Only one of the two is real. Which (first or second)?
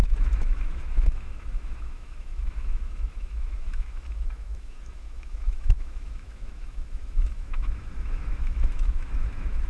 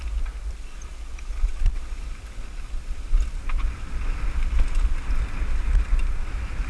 second